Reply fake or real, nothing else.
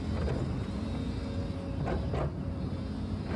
real